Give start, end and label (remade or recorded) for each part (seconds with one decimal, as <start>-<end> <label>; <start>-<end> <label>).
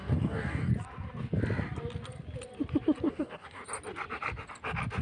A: 0.0-0.7 remade; 0.7-3.1 recorded; 3.1-3.6 remade; 3.6-5.0 recorded